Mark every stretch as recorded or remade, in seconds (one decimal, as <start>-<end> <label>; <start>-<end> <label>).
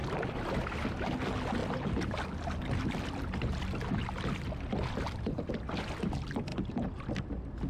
0.0-7.7 recorded